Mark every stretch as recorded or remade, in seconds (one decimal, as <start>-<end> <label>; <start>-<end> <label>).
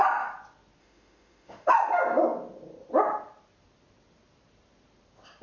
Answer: 0.0-0.8 recorded; 0.8-1.7 remade; 1.7-5.4 recorded